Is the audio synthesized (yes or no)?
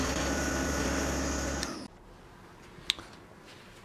no